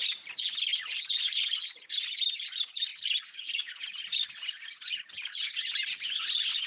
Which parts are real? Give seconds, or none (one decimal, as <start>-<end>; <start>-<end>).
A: 0.0-6.7